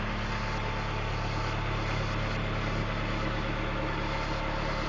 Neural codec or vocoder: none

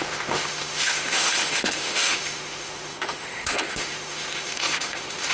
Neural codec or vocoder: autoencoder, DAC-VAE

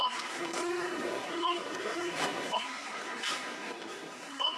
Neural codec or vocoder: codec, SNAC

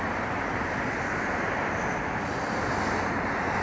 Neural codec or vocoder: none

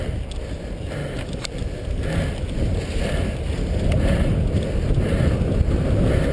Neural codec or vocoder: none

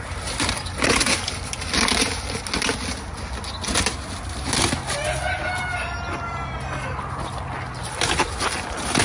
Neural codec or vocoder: none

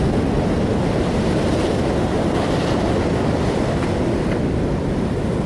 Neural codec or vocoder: none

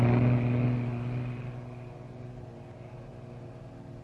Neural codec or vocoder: none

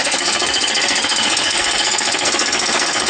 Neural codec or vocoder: codec, SNAC